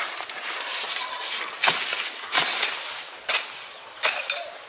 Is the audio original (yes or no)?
yes